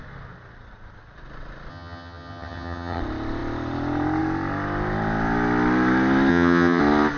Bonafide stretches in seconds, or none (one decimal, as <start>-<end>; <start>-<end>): 0.0-1.7; 3.0-6.3; 6.8-7.2